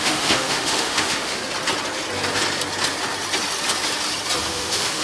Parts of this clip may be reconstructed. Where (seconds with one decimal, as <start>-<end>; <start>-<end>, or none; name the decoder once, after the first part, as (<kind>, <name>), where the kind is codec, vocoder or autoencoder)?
0.0-1.4 (autoencoder, DAC-VAE); 4.4-5.0